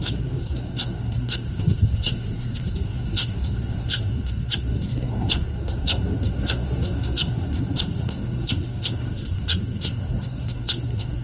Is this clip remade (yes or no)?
yes